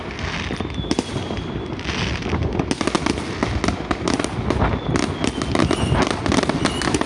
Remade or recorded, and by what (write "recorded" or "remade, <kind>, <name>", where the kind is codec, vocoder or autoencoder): recorded